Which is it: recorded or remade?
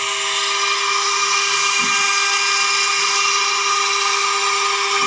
recorded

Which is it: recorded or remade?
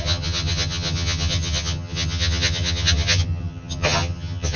remade